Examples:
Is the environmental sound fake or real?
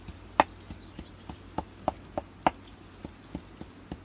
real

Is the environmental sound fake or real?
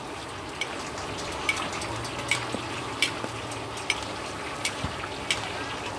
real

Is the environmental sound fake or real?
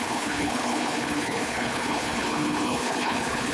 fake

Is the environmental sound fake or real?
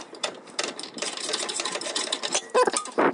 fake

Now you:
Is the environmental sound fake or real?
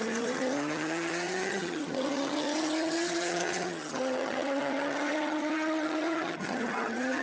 fake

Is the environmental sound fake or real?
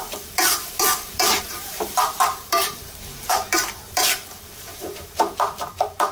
fake